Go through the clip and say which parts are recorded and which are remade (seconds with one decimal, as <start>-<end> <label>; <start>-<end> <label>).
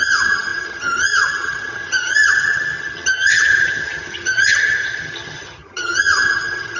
0.0-6.8 remade